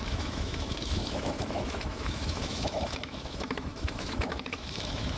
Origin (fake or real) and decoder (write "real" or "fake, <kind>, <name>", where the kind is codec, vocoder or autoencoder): fake, autoencoder, DAC-VAE